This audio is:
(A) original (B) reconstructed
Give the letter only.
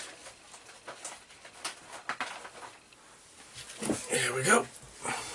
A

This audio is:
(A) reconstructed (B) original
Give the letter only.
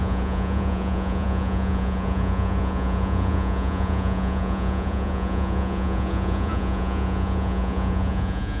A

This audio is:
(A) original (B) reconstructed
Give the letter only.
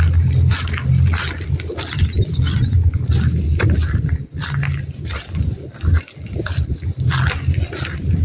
A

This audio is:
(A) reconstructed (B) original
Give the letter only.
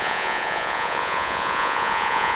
A